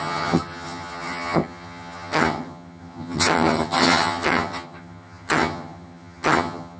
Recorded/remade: remade